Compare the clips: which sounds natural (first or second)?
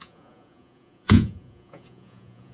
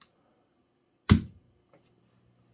second